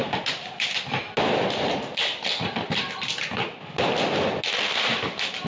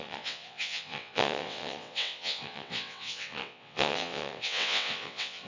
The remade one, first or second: second